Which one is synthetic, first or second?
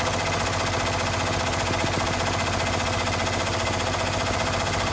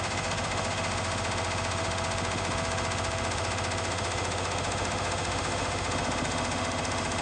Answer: second